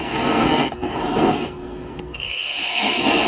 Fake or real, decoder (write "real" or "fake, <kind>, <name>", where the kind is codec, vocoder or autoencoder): fake, codec, SNAC